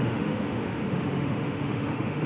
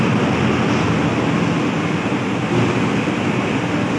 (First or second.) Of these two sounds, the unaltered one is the second